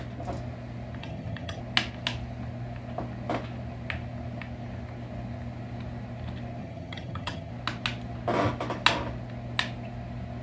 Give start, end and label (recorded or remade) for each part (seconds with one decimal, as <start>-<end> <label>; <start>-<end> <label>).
0.0-1.0 recorded; 1.0-1.6 remade; 1.6-6.6 recorded; 6.6-7.5 remade; 7.5-10.4 recorded